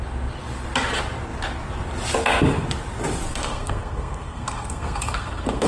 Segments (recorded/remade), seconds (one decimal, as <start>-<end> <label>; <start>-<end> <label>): 0.0-3.3 recorded; 3.3-5.7 remade